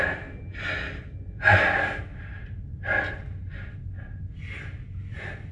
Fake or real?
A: real